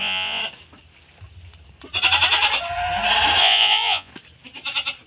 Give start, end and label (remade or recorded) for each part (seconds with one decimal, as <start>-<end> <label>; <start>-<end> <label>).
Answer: 0.0-0.4 remade; 0.4-3.4 recorded; 3.4-4.1 remade; 4.1-5.1 recorded